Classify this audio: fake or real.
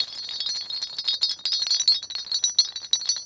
real